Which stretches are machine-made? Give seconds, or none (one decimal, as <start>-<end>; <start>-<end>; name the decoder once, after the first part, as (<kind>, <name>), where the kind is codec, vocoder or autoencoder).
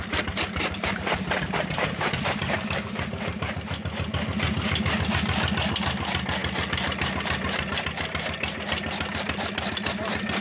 none